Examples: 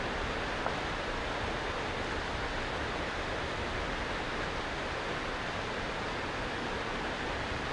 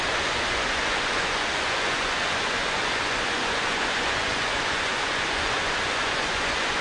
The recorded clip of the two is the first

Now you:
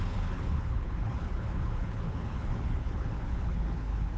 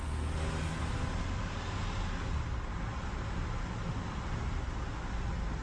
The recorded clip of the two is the second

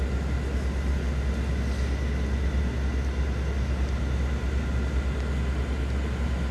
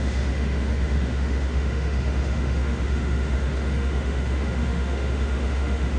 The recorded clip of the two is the first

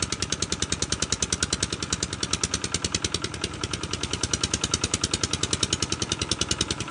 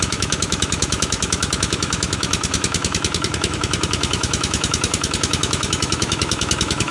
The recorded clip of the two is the first